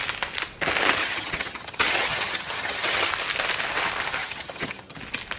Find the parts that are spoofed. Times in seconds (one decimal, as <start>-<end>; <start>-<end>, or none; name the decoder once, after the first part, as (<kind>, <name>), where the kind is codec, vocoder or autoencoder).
1.0-3.1 (vocoder, HiFi-GAN); 4.2-5.0

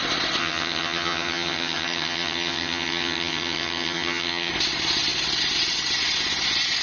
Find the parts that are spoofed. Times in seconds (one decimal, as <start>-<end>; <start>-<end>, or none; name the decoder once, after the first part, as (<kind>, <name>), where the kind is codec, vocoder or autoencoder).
0.4-4.5 (vocoder, HiFi-GAN)

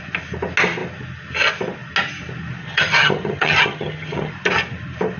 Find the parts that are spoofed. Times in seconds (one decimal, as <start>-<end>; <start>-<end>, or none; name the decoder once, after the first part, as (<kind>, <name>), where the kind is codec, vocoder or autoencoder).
2.6-4.3 (vocoder, HiFi-GAN)

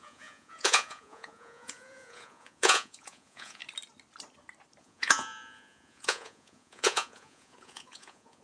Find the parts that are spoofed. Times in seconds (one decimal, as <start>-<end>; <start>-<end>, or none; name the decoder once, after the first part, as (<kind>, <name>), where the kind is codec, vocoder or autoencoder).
0.0-3.6 (vocoder, Vocos); 4.8-8.4